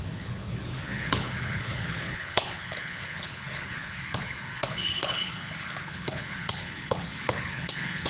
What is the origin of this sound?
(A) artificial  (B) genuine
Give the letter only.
A